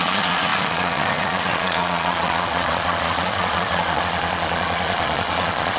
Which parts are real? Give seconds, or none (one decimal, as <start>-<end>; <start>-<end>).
none